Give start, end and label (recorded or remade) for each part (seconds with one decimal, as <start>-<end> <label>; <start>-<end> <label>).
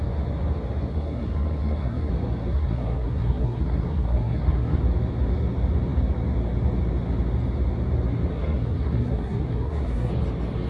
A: 0.0-0.9 recorded; 0.9-2.1 remade; 2.1-2.5 recorded; 2.5-4.8 remade; 4.8-8.3 recorded; 8.3-10.1 remade; 10.1-10.7 recorded